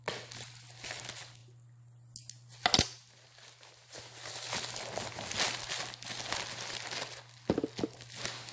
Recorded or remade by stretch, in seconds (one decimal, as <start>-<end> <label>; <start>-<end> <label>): 0.0-8.5 recorded